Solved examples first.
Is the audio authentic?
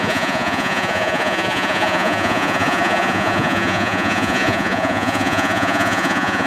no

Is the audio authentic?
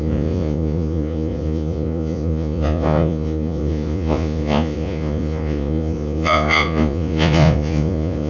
no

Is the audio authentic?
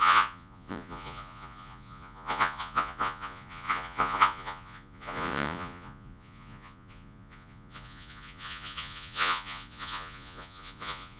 no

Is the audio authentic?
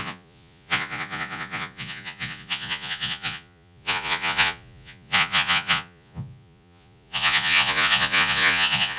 no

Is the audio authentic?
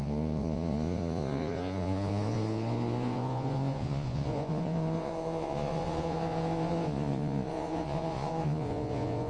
no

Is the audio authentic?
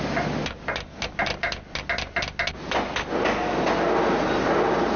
yes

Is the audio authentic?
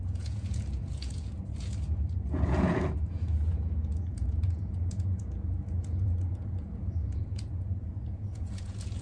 no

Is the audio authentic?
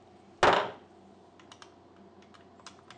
yes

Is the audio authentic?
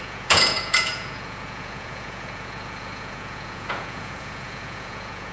no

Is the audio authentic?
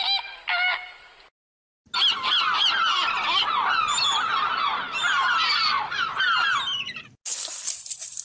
yes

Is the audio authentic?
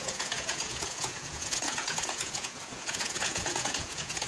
no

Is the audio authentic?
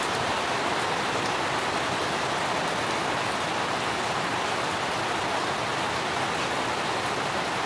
yes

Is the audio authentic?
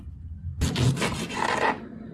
yes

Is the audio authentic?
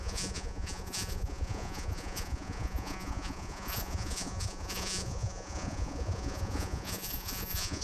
no